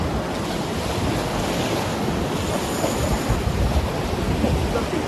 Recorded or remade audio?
recorded